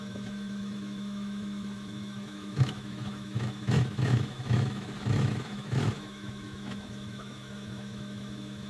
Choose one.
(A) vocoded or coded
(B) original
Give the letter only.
A